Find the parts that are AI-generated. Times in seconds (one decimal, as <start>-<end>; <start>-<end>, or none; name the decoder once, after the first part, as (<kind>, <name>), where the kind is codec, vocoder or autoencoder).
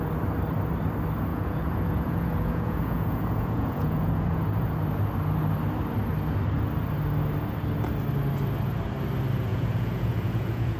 1.3-4.7 (vocoder, Vocos); 9.5-10.8